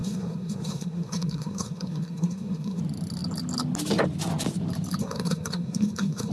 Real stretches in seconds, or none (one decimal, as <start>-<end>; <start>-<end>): 2.8-5.0